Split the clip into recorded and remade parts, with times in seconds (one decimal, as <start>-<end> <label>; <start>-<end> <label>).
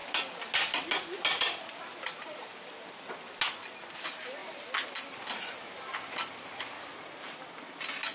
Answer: 0.0-8.1 recorded